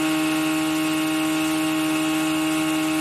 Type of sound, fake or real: real